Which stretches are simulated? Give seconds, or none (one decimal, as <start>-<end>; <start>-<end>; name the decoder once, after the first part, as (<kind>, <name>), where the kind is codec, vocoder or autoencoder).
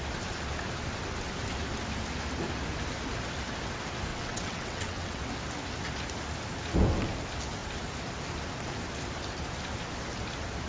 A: 4.1-5.2 (vocoder, WaveNeXt)